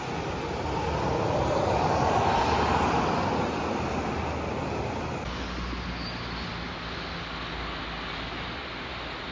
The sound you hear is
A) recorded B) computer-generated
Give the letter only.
A